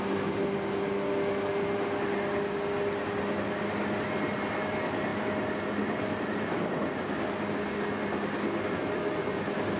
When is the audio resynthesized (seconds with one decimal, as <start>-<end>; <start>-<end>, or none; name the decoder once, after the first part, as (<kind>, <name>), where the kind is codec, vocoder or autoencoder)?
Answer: none